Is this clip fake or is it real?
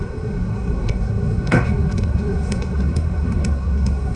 fake